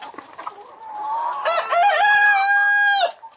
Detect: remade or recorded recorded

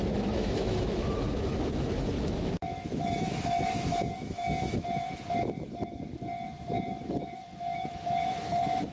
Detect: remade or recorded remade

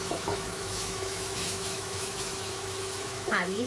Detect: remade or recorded remade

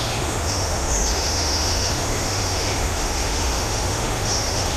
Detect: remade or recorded remade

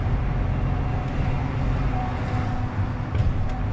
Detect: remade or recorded recorded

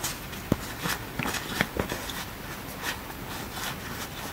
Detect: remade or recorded recorded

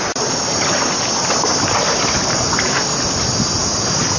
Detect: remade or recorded recorded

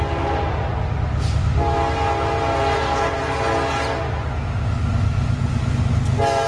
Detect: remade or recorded recorded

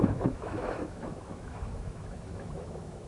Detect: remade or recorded remade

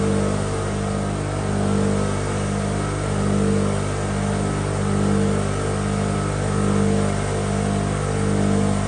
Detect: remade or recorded recorded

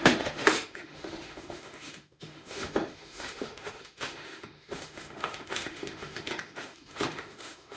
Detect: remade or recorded remade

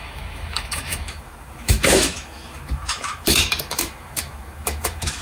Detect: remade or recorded remade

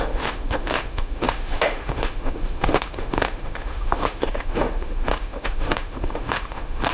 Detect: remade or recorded remade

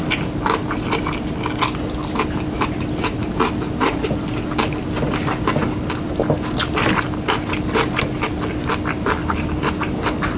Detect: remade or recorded recorded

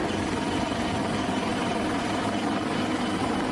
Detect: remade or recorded recorded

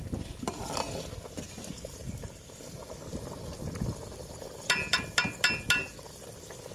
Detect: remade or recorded recorded